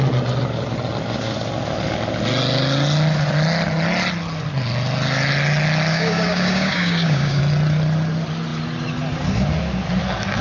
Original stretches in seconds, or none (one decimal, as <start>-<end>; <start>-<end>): 0.0-5.9; 7.4-10.4